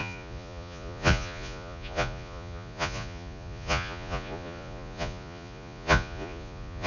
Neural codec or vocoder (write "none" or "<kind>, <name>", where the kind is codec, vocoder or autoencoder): vocoder, Vocos